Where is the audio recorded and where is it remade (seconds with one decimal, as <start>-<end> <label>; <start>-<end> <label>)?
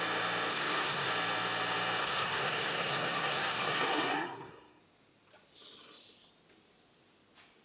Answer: 0.0-0.5 recorded; 0.5-1.1 remade; 1.1-2.0 recorded; 2.0-4.8 remade; 4.8-7.6 recorded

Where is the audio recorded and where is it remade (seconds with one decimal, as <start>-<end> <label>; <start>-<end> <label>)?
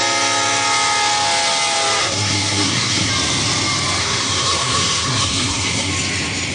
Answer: 0.0-2.0 recorded; 2.0-3.1 remade; 3.1-4.0 recorded; 4.0-5.9 remade; 5.9-6.5 recorded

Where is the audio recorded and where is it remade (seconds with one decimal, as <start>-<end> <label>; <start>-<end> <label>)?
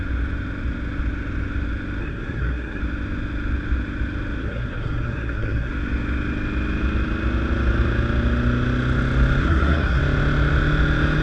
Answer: 0.0-2.0 recorded; 2.0-2.8 remade; 2.8-4.4 recorded; 4.4-5.7 remade; 5.7-9.4 recorded; 9.4-10.0 remade; 10.0-11.2 recorded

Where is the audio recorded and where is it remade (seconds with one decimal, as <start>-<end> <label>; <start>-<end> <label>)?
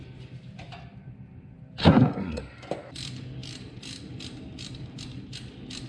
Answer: 0.0-1.8 recorded; 1.8-2.4 remade; 2.4-5.9 recorded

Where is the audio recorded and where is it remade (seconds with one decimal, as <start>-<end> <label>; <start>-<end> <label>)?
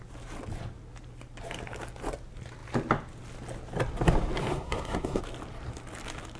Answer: 0.0-4.5 recorded; 4.5-5.2 remade; 5.2-6.4 recorded